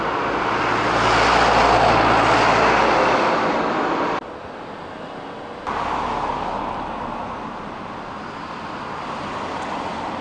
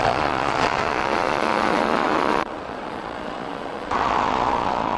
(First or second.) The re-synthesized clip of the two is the second